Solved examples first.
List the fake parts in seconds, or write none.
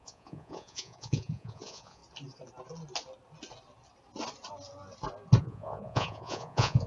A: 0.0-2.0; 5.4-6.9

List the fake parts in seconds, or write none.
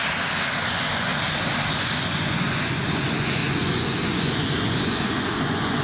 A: 0.7-1.1; 1.8-5.8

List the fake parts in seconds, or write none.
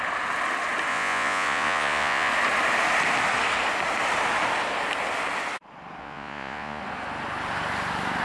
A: 0.9-2.3; 6.0-6.8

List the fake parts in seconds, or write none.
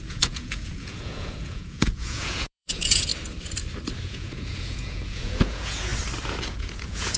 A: 0.0-3.1; 4.0-5.9; 6.4-7.2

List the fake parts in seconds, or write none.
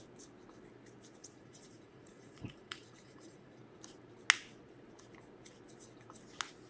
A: 1.2-3.6